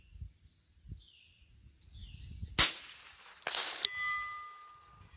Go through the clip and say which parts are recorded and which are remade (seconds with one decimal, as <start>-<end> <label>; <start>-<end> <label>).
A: 0.0-5.2 recorded

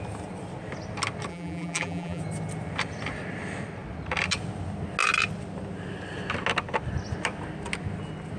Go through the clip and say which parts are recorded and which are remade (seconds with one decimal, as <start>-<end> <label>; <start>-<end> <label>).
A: 0.0-1.3 recorded; 1.3-2.2 remade; 2.2-8.4 recorded

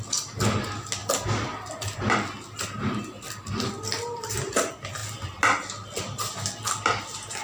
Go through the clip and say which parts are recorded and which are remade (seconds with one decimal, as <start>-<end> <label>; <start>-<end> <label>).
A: 0.0-7.4 recorded